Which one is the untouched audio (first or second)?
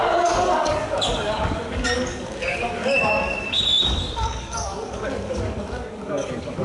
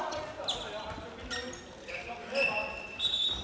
second